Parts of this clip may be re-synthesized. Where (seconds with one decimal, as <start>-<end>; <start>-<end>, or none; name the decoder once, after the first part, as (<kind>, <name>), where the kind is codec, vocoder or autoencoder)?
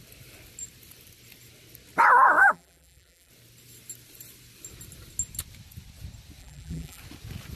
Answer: 2.4-3.3 (vocoder, BigVGAN v2); 6.4-7.0